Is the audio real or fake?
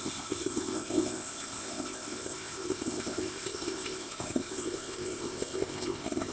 fake